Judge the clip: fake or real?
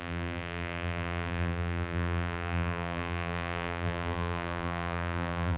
fake